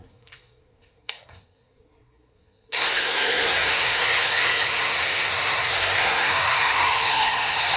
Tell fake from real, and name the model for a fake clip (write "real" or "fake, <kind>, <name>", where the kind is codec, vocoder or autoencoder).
fake, codec, SNAC